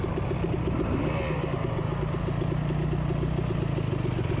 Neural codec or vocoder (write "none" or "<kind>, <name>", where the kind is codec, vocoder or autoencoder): none